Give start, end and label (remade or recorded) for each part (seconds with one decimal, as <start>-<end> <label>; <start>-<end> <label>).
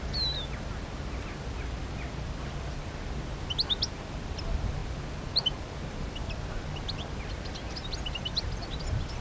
0.0-9.2 recorded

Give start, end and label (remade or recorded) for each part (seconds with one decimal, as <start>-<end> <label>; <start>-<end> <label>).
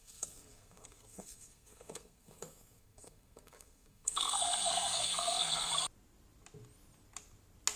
0.0-5.7 remade; 5.7-7.8 recorded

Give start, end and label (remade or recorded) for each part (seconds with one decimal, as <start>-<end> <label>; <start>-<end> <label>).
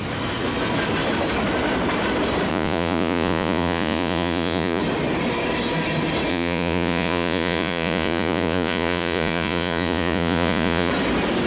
0.0-2.5 recorded; 2.5-4.8 remade; 4.8-6.3 recorded; 6.3-10.9 remade; 10.9-11.5 recorded